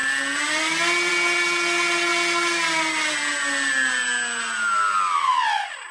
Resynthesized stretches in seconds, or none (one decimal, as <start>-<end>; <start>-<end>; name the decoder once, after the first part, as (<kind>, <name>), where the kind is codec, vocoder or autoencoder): none